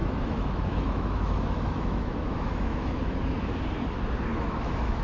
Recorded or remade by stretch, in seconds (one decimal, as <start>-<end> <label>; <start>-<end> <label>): 0.0-3.0 remade; 3.0-4.3 recorded; 4.3-5.0 remade